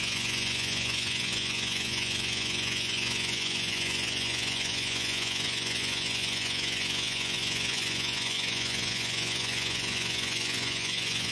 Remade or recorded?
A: remade